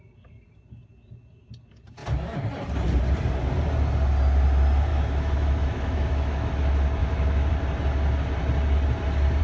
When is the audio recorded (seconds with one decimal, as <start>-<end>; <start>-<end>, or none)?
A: 0.0-4.9; 6.5-7.0; 7.5-9.4